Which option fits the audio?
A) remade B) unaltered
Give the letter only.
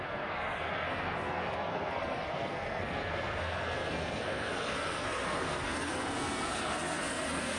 A